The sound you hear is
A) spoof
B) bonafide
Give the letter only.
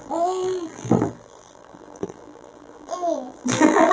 A